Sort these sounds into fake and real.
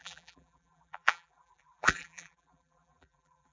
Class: fake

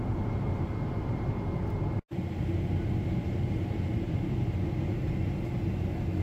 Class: real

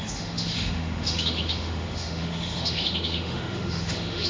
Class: fake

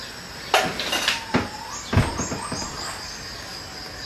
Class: real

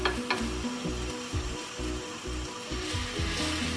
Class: real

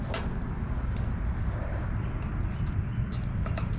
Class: real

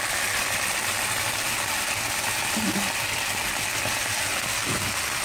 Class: real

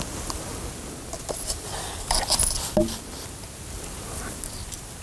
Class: real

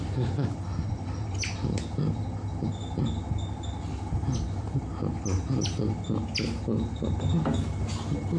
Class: real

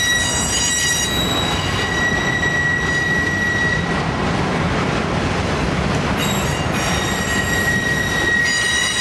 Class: real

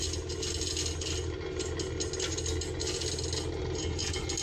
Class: real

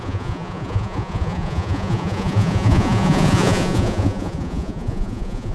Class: fake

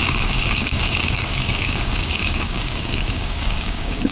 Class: fake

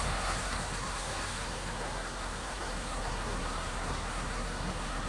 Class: fake